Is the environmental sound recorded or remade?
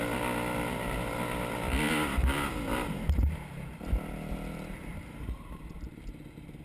recorded